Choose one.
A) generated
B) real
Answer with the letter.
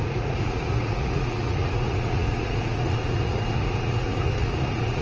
A